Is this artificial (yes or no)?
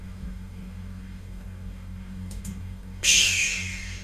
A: yes